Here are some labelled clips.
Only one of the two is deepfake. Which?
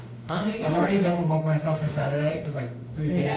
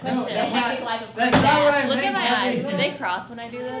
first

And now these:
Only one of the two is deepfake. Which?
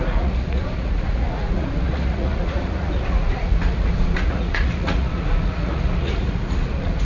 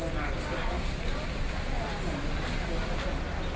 first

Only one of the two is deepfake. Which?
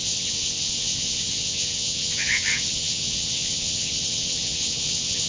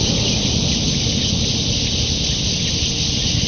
first